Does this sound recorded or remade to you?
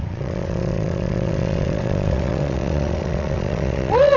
remade